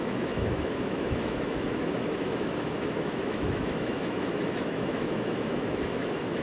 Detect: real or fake fake